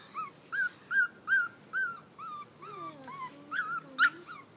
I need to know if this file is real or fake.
real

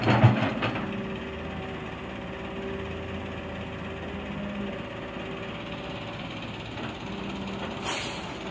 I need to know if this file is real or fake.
real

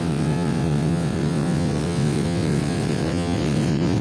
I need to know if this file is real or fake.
fake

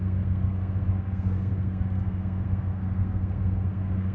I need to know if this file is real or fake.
fake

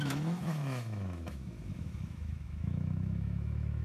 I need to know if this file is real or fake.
fake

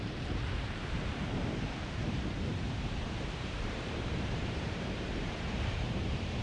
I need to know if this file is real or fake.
fake